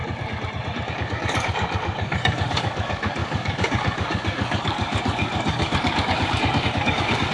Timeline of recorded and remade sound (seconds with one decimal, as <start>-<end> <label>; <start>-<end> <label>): 0.0-0.9 recorded; 0.9-7.3 remade

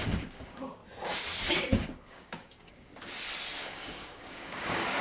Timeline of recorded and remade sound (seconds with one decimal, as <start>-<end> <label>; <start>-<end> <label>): 0.0-0.8 remade; 0.8-1.5 recorded; 1.5-2.9 remade; 2.9-3.6 recorded; 3.6-5.0 remade